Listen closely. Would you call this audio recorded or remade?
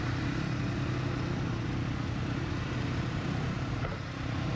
recorded